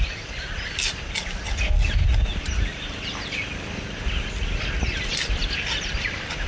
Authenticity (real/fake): real